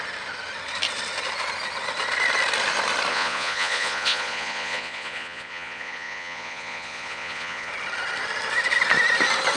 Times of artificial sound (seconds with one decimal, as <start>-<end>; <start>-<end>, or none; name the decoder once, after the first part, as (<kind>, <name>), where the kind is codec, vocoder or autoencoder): 3.1-7.7 (vocoder, Vocos)